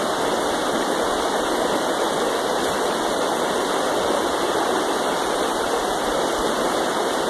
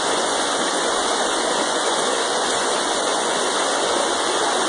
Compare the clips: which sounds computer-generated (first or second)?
second